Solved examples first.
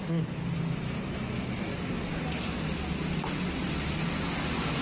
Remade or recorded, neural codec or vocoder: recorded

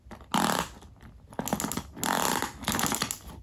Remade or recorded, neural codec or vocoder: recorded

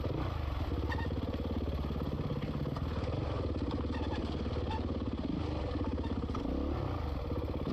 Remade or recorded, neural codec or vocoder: recorded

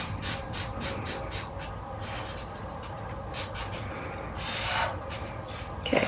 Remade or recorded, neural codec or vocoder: remade, vocoder, BigVGAN v2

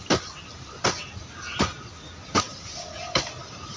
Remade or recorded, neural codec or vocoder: recorded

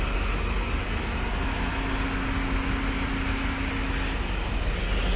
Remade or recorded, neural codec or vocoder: recorded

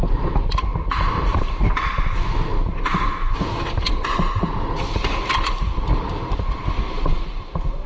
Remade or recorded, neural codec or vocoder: recorded